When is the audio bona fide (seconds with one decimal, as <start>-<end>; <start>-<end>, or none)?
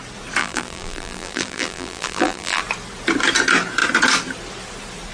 0.0-0.4; 2.6-5.1